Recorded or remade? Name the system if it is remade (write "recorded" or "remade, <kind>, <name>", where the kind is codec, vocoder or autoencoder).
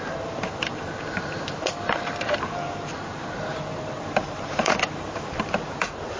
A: remade, vocoder, BigVGAN v2